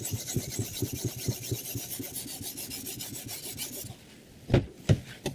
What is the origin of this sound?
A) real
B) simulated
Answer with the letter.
A